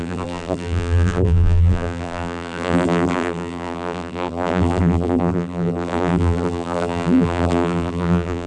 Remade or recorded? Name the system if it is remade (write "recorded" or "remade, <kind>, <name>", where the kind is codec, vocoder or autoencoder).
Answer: remade, vocoder, BigVGAN v2